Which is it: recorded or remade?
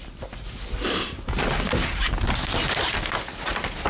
recorded